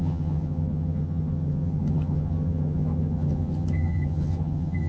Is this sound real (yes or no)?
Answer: no